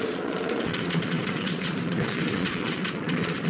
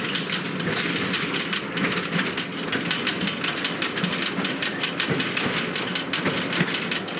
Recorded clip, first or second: second